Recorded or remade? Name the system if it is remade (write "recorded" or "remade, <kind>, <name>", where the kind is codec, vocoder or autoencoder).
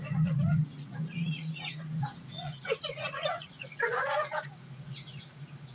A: remade, vocoder, Vocos